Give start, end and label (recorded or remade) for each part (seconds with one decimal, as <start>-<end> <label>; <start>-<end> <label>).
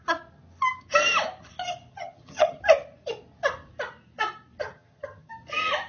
0.0-1.9 recorded; 1.9-2.6 remade; 2.6-4.6 recorded; 4.6-5.3 remade; 5.3-5.9 recorded